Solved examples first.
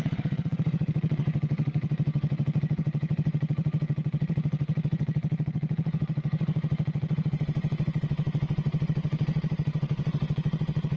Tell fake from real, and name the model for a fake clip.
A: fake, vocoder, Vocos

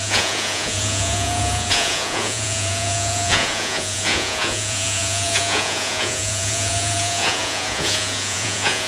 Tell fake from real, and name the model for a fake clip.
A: fake, vocoder, Vocos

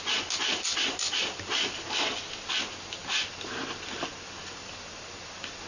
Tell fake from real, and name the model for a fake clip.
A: real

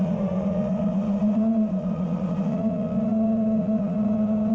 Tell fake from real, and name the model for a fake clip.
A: fake, vocoder, Vocos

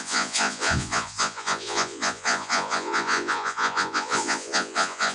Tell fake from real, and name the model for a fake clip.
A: fake, vocoder, Vocos